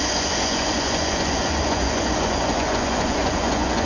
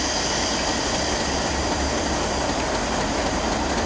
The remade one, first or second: first